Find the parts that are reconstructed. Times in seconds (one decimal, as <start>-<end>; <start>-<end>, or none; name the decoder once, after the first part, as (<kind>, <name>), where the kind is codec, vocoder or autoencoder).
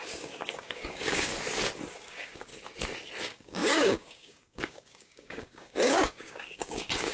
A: 0.0-1.3 (codec, DAC); 1.9-2.5; 3.2-7.1